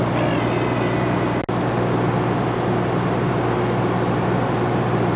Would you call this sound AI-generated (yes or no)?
no